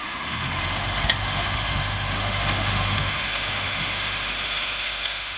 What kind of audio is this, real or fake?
fake